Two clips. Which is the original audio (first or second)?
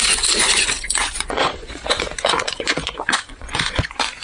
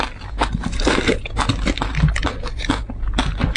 second